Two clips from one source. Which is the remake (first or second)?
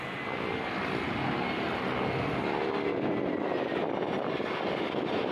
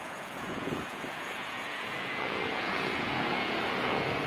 second